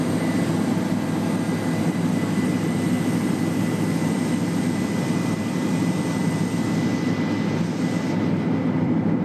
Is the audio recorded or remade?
recorded